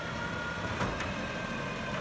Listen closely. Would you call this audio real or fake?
real